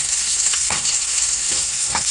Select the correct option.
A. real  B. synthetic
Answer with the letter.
B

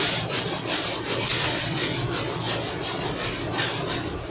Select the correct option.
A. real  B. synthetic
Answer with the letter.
A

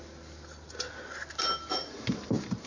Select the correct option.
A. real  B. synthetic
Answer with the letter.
A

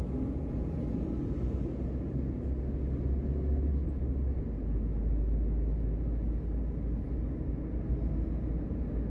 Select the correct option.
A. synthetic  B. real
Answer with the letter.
B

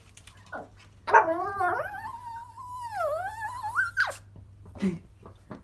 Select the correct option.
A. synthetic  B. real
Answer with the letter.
B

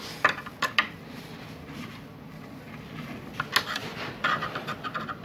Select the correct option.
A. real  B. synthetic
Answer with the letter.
A